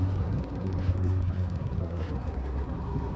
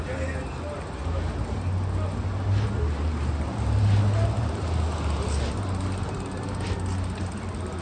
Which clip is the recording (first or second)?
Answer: second